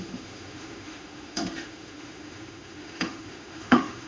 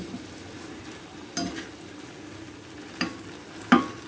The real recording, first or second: second